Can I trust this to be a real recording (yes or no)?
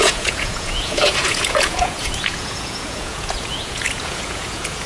no